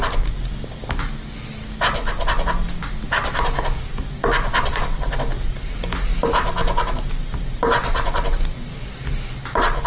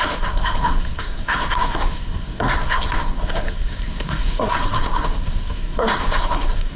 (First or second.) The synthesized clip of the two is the second